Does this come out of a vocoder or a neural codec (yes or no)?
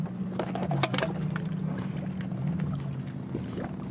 no